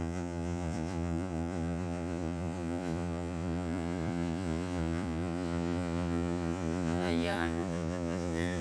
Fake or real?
fake